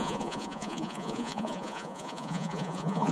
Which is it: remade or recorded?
remade